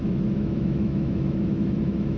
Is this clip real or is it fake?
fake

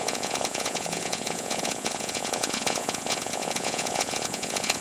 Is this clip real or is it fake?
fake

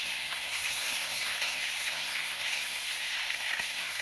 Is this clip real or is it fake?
fake